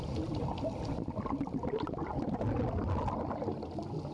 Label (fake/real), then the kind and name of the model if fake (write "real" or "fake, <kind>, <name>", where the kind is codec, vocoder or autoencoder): real